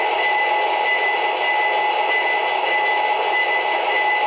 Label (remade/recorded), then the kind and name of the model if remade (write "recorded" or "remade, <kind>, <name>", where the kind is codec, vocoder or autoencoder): recorded